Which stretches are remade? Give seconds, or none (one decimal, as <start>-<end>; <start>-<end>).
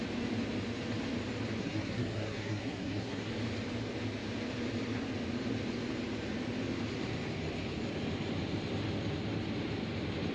1.6-3.3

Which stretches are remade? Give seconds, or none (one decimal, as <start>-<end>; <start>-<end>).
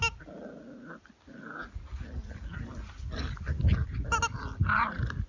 none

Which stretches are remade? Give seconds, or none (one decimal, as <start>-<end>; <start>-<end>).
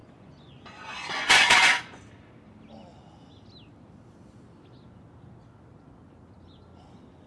0.0-2.0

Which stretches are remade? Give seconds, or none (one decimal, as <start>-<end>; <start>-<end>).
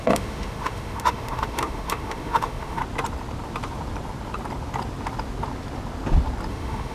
0.0-2.8; 6.5-6.9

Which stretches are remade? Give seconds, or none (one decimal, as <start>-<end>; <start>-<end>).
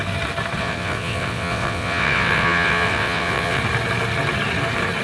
0.6-3.6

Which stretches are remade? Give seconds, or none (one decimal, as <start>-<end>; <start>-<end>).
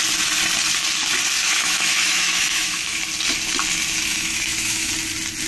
1.4-3.0; 4.1-4.9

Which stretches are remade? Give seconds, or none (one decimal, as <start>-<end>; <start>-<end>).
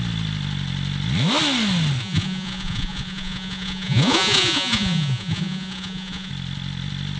2.0-6.3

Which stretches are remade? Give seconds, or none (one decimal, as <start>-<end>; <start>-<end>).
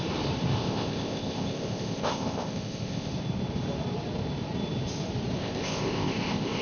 0.6-3.1; 5.4-6.6